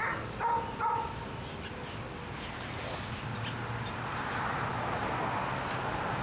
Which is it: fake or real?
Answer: real